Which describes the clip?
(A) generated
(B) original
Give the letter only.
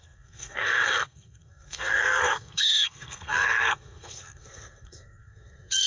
A